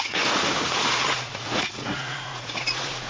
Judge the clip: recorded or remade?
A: remade